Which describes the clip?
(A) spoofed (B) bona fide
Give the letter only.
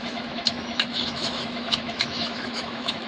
A